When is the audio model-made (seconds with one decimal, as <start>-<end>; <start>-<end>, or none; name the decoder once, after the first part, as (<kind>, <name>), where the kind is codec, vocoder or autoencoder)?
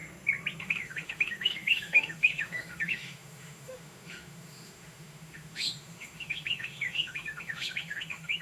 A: 0.6-8.4 (autoencoder, DAC-VAE)